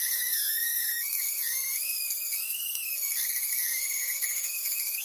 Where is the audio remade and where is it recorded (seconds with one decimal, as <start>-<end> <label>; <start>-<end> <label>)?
0.0-5.0 remade